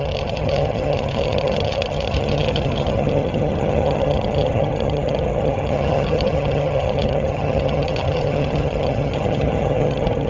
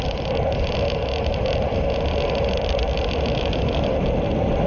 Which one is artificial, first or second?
first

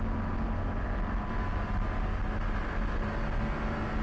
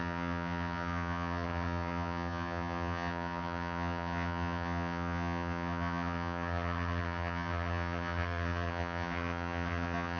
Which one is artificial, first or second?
second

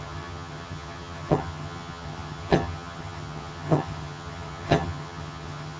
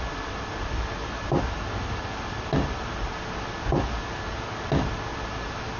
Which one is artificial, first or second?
first